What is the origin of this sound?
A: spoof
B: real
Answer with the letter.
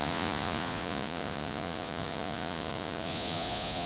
A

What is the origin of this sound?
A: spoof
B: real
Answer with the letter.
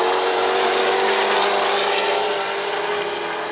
B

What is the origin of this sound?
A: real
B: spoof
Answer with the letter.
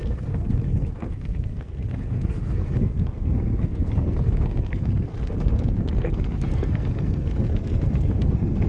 B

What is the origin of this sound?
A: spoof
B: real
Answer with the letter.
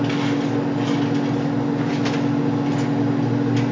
B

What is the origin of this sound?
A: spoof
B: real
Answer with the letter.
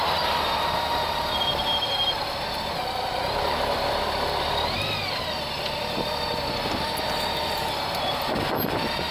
B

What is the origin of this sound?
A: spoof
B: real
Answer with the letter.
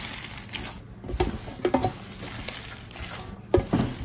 B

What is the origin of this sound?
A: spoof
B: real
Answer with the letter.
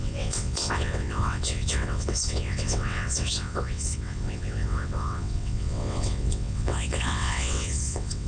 A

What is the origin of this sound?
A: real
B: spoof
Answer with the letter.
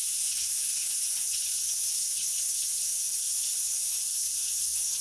B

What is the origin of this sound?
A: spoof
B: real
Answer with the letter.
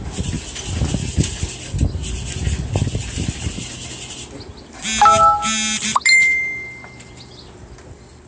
B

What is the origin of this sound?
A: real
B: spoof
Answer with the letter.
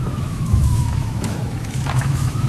B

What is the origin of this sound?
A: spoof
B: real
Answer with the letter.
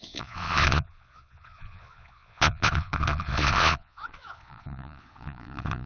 A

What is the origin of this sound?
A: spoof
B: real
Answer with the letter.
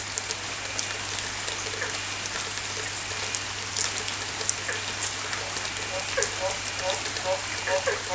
B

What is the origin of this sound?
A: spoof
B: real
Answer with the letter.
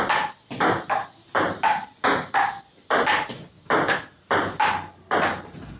B